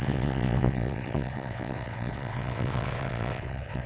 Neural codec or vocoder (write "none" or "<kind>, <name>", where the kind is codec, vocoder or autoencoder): vocoder, WaveNeXt